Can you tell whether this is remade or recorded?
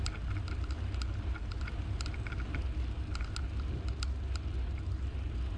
recorded